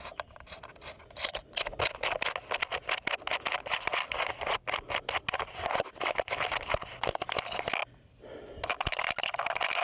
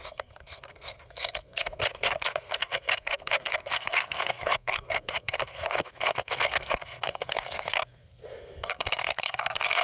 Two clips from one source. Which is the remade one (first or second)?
second